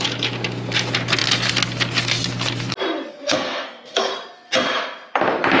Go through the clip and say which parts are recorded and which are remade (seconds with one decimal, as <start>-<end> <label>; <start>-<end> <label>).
0.0-3.1 recorded; 3.1-4.1 remade; 4.1-5.6 recorded